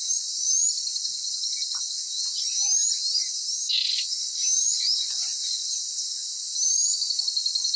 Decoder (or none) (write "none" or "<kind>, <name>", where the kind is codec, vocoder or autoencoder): none